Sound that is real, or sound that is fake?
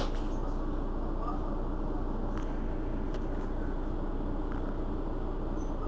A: real